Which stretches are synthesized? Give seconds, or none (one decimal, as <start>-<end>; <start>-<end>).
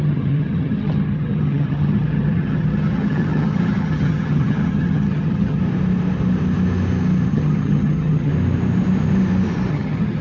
0.0-5.6; 7.3-8.3; 9.7-10.2